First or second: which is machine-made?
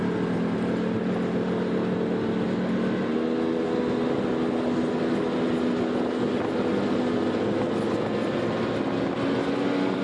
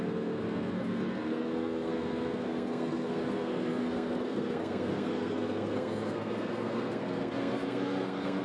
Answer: second